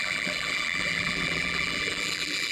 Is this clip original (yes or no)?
no